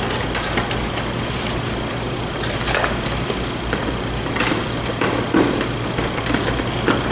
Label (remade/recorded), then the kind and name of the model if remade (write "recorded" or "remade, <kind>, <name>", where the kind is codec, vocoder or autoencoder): recorded